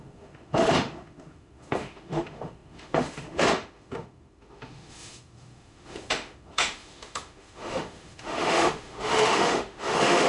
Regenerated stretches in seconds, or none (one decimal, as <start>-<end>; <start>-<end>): 0.0-10.3